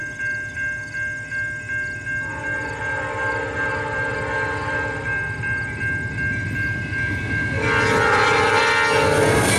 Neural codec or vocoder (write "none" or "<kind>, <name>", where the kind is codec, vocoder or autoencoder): none